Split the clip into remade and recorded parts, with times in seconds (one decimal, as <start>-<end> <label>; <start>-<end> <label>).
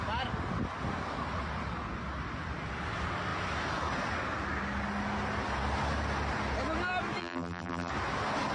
0.0-7.2 recorded; 7.2-7.9 remade; 7.9-8.5 recorded